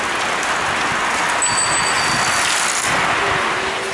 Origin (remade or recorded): recorded